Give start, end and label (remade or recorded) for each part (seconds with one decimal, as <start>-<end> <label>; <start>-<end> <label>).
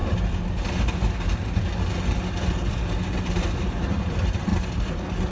0.0-2.7 recorded; 2.7-4.5 remade; 4.5-5.3 recorded